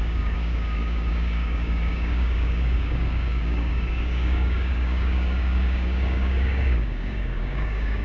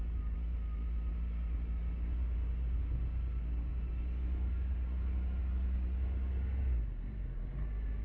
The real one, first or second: second